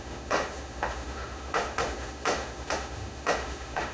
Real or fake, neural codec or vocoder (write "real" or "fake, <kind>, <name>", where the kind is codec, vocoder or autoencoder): fake, autoencoder, DAC-VAE